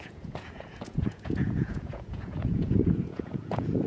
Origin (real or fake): fake